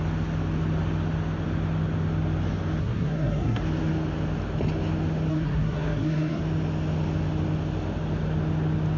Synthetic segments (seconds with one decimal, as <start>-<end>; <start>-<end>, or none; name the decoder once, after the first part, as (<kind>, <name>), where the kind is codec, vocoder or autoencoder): 2.8-3.6 (codec, SNAC); 5.3-6.4